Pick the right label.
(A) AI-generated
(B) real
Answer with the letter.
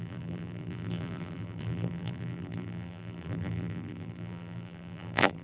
A